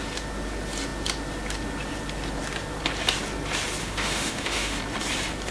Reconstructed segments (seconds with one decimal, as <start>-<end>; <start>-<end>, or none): 3.8-4.8